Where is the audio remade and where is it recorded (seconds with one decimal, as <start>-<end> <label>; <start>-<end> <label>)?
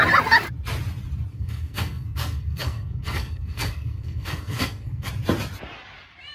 0.0-1.3 recorded; 1.3-5.1 remade; 5.1-6.3 recorded